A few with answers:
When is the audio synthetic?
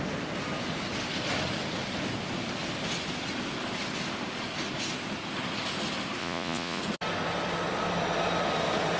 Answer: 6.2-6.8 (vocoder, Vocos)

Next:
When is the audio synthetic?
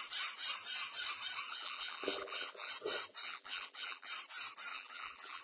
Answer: 1.5-2.7 (vocoder, BigVGAN v2); 3.2-4.1; 4.7-5.4